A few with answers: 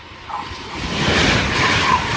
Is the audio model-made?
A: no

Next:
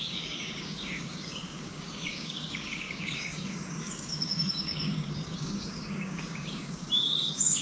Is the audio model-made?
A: yes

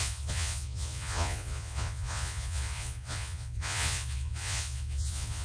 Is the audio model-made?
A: yes